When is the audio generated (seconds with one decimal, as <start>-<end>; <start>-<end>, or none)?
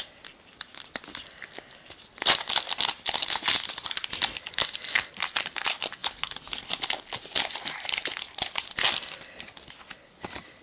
none